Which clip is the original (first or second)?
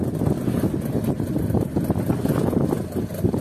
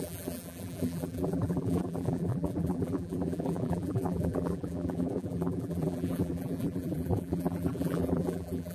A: first